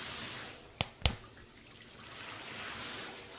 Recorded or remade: recorded